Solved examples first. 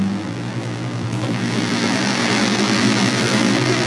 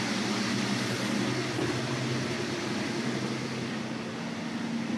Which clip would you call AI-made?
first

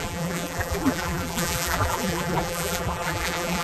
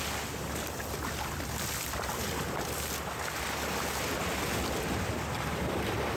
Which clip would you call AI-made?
first